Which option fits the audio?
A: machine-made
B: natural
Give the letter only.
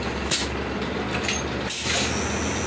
B